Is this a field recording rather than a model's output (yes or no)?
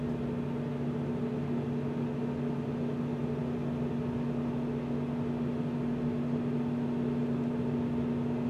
yes